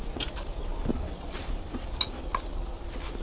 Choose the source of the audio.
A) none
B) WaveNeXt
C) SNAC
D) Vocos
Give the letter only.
A